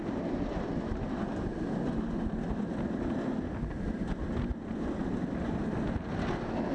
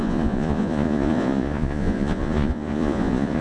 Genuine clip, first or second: first